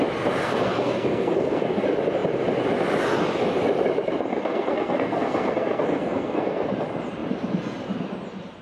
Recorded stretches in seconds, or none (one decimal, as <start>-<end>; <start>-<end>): 0.0-0.4; 1.8-4.3; 6.7-8.6